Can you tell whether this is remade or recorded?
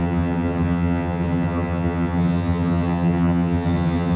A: remade